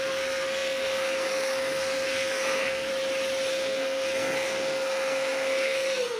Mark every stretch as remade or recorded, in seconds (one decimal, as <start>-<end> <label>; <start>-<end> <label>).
0.0-2.9 remade; 2.9-3.5 recorded; 3.5-6.2 remade